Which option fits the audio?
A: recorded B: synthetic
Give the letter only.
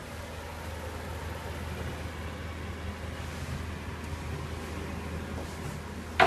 A